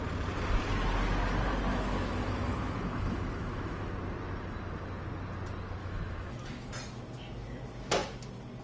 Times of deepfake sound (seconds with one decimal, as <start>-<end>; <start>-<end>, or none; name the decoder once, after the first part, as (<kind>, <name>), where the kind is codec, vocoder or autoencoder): 1.7-3.9 (autoencoder, DAC-VAE); 5.8-6.7